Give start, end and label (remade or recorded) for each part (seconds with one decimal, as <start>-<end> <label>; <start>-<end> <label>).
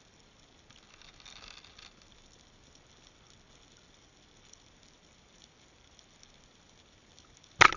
0.0-7.8 recorded